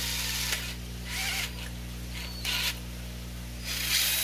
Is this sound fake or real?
real